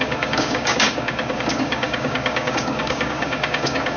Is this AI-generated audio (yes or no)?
yes